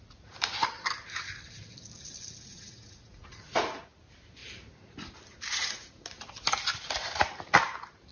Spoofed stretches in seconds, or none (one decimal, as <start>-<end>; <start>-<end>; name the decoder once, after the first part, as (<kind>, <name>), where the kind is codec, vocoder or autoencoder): 2.5-4.0 (vocoder, Vocos); 4.4-5.0; 5.5-6.2